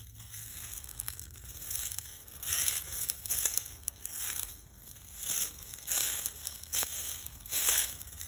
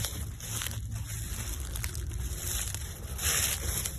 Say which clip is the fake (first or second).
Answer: first